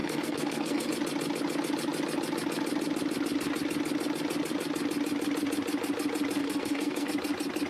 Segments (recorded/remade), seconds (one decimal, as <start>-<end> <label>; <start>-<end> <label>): 0.0-0.9 remade; 0.9-6.4 recorded; 6.4-7.1 remade; 7.1-7.7 recorded